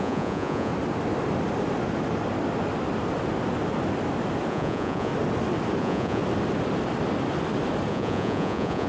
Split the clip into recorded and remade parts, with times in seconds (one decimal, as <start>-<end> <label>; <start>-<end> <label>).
0.0-0.7 remade; 0.7-4.5 recorded; 4.5-5.1 remade; 5.1-5.8 recorded; 5.8-6.2 remade; 6.2-7.9 recorded; 7.9-8.9 remade